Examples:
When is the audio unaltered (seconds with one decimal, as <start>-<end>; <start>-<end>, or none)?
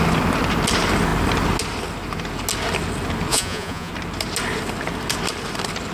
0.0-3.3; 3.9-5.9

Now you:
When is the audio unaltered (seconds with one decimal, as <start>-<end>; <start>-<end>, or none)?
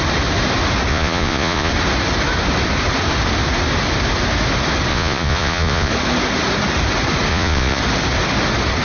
0.0-0.9; 1.7-4.9; 5.9-7.3; 7.8-8.8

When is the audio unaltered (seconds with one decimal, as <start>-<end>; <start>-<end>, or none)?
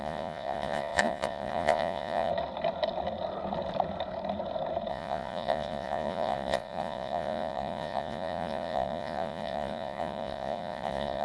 2.3-4.9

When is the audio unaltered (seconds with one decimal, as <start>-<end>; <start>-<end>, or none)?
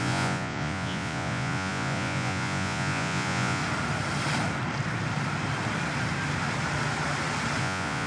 3.6-7.6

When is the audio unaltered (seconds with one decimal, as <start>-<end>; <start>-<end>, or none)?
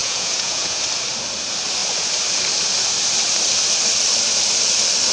0.8-5.1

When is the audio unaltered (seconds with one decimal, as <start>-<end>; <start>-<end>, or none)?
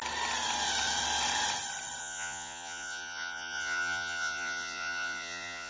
0.0-2.0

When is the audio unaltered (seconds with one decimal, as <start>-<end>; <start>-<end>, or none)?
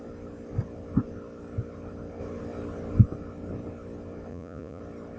0.0-4.3; 4.8-5.2